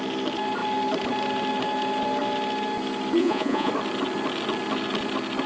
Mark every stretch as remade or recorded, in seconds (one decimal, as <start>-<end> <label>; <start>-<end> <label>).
0.0-3.2 recorded; 3.2-3.7 remade; 3.7-5.5 recorded